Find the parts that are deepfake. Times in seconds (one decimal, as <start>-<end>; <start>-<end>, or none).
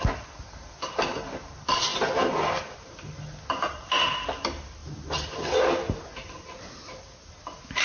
none